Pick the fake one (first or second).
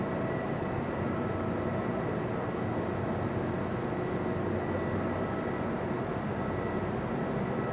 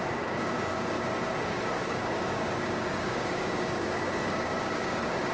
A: second